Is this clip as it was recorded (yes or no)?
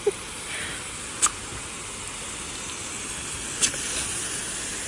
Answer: yes